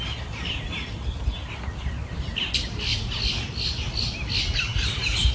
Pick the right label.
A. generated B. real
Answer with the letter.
B